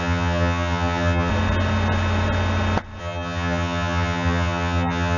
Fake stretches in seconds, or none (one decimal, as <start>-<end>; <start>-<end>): 0.0-1.3; 3.0-5.2